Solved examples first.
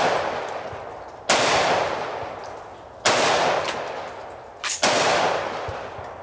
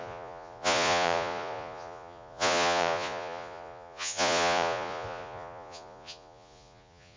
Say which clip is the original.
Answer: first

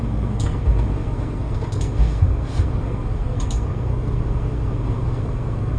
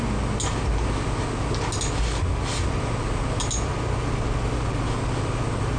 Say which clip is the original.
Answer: second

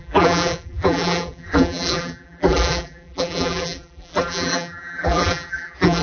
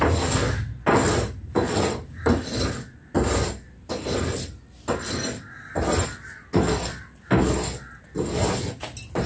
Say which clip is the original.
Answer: second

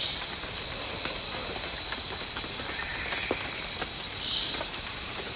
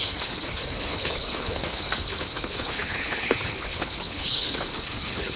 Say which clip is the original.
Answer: first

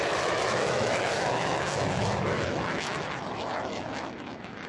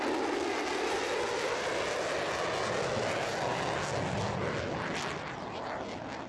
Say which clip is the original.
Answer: second